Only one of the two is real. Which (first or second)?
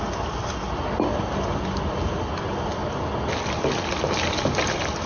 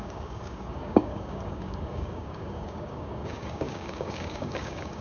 first